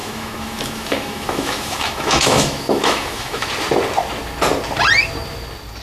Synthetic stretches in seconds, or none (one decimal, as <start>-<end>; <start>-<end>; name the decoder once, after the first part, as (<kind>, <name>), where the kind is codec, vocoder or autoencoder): 0.0-3.5 (autoencoder, DAC-VAE)